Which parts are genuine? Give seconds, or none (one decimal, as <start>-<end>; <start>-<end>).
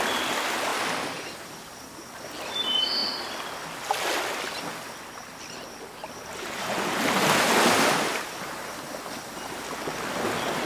0.0-0.7; 2.1-3.0; 4.6-10.7